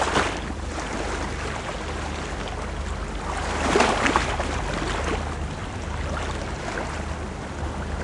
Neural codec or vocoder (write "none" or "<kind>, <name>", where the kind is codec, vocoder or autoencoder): none